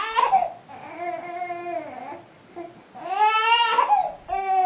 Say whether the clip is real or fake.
real